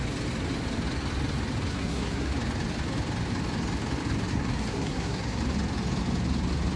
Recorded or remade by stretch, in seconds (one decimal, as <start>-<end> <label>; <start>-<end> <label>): 0.0-1.7 recorded; 1.7-2.3 remade; 2.3-4.3 recorded; 4.3-5.4 remade; 5.4-6.8 recorded